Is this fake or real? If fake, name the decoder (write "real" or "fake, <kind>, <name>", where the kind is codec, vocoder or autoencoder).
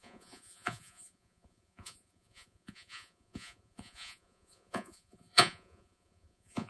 fake, vocoder, Vocos